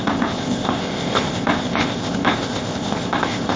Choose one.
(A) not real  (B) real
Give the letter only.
A